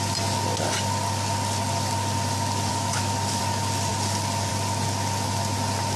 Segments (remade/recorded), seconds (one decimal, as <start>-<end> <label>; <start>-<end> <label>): 0.0-2.7 recorded; 2.7-3.4 remade; 3.4-6.0 recorded